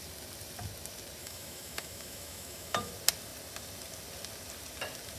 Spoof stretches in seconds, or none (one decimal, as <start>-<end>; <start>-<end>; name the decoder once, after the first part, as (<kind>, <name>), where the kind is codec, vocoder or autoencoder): 1.2-2.9 (autoencoder, DAC-VAE)